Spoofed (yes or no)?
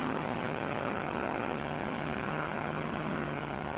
yes